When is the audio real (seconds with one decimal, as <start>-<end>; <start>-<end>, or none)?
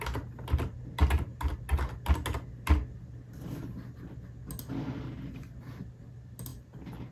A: 0.0-7.1